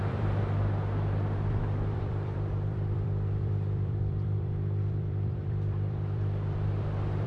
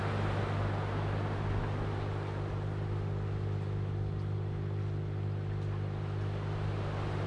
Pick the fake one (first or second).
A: first